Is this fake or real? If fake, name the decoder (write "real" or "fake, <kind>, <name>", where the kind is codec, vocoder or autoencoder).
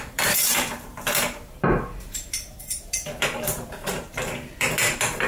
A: fake, vocoder, BigVGAN v2